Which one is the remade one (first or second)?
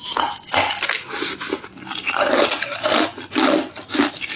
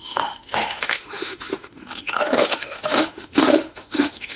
second